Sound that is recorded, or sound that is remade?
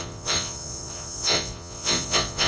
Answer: remade